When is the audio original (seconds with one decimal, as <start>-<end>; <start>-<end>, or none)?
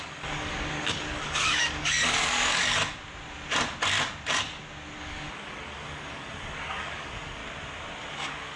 2.8-5.0; 7.4-8.1